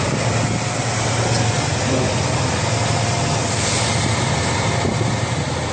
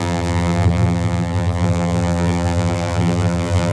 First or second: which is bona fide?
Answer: first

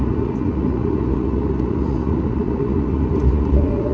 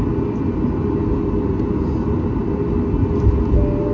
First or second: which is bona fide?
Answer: second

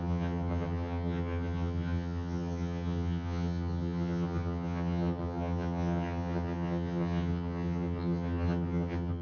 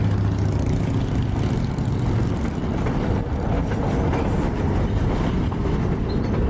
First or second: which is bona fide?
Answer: second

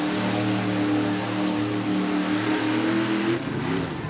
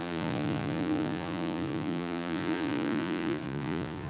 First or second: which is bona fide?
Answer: first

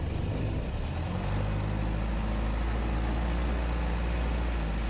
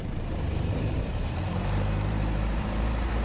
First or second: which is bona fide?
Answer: first